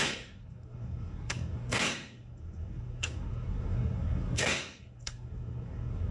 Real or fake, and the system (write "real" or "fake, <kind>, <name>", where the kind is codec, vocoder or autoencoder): fake, codec, SNAC